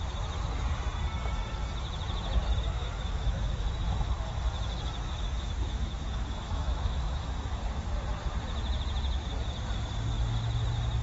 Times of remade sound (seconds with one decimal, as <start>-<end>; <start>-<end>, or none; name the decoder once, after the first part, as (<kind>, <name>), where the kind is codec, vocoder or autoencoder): 2.7-7.6 (autoencoder, DAC-VAE)